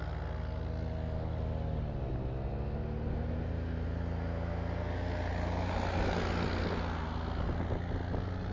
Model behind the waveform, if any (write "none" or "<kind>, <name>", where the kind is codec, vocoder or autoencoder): none